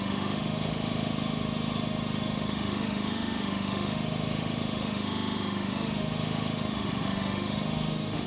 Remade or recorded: remade